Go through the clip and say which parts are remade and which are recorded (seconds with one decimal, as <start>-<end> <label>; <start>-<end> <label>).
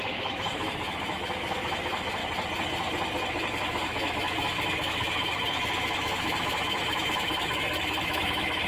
0.0-2.2 remade; 2.2-3.5 recorded; 3.5-8.7 remade